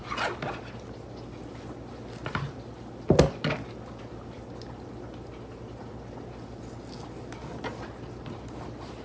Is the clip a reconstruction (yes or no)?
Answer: no